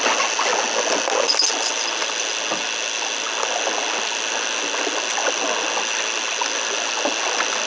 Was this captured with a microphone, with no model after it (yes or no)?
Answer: yes